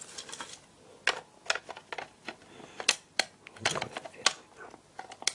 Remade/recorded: recorded